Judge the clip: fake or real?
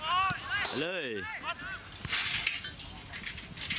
real